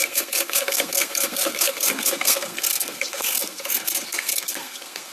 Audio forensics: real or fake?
fake